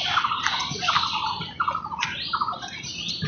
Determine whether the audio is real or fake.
real